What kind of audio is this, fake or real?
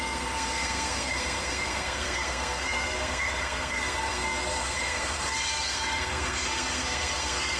fake